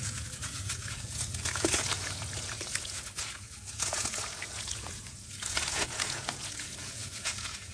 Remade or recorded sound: remade